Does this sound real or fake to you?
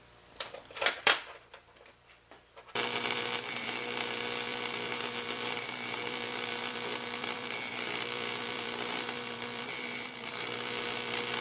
fake